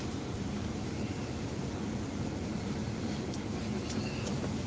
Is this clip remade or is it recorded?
recorded